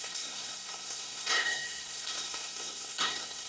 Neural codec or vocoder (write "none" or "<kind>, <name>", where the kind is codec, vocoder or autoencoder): codec, SNAC